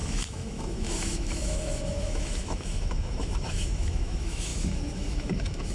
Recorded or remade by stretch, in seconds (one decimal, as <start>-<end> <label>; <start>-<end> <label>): 0.0-5.7 remade